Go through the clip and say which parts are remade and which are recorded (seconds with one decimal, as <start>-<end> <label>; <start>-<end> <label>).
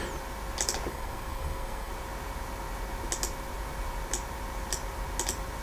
0.0-0.9 recorded; 0.9-1.9 remade; 1.9-5.6 recorded